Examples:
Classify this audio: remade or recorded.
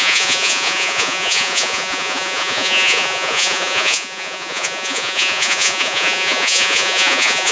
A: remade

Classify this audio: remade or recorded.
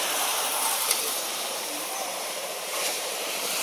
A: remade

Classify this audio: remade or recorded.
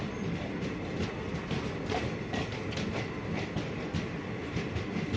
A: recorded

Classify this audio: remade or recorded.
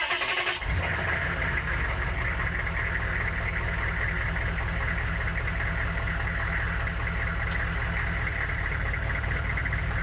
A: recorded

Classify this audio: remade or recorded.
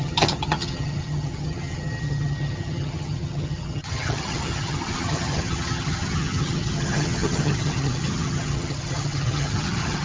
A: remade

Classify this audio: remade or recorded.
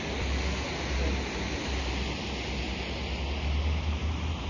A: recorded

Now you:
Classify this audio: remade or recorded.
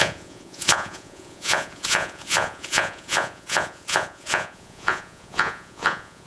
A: remade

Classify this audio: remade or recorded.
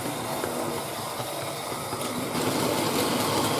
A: recorded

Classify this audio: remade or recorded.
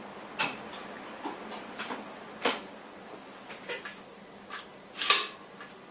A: recorded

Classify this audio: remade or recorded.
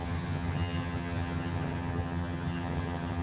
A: remade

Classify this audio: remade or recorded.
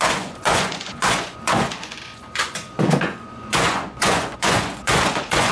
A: remade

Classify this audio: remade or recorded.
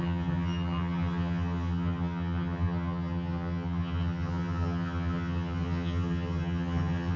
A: remade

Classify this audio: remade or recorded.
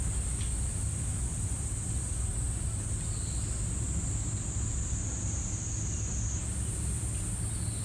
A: recorded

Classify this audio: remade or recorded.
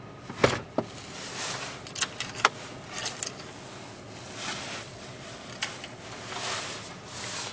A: recorded